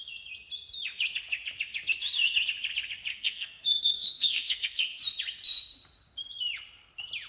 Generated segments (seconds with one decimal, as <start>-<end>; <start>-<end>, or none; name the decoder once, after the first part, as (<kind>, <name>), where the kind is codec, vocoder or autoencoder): 3.1-5.0 (codec, SNAC)